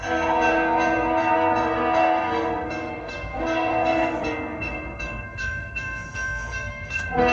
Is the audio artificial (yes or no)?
yes